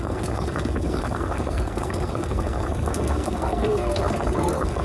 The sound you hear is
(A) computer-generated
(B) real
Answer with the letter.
A